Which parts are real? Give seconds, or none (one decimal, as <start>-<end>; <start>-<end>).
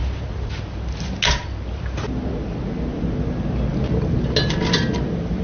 0.0-5.4